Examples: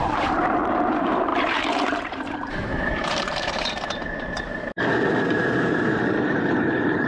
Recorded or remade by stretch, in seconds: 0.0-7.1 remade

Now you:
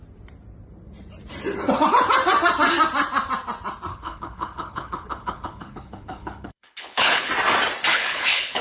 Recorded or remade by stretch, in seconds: 0.0-3.9 recorded; 3.9-7.3 remade; 7.3-7.9 recorded; 7.9-8.6 remade

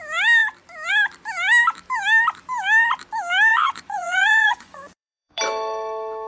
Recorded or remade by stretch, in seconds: 0.0-3.5 recorded; 3.5-5.4 remade; 5.4-6.3 recorded

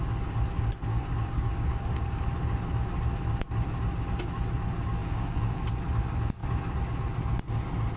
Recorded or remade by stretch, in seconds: 0.0-0.9 recorded; 0.9-2.2 remade; 2.2-5.0 recorded; 5.0-5.6 remade; 5.6-8.0 recorded

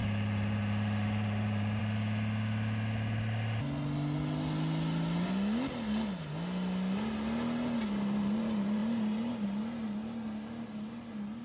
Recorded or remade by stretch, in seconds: 0.0-1.8 remade; 1.8-11.4 recorded

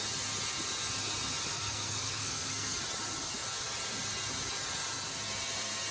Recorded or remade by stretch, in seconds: 0.0-1.5 recorded; 1.5-2.8 remade; 2.8-5.9 recorded